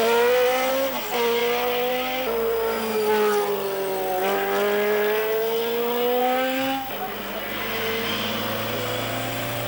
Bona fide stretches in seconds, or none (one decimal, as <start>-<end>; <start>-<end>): 0.0-6.2; 6.9-9.7